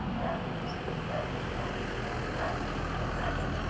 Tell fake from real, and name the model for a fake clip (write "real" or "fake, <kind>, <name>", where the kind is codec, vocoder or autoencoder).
real